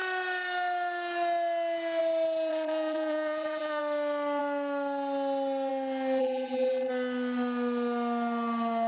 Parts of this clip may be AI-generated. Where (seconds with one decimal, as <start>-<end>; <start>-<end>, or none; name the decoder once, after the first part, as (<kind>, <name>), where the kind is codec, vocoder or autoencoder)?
2.5-3.8 (vocoder, BigVGAN v2); 6.2-6.9